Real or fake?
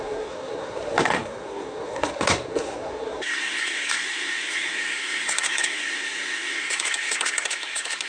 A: fake